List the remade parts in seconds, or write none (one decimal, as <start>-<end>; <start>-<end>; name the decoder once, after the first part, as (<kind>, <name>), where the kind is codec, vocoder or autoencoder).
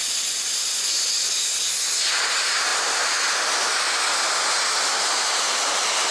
none